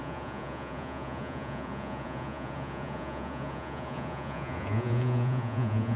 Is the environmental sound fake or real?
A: fake